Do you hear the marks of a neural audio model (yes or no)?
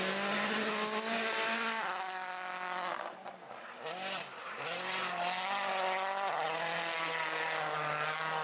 no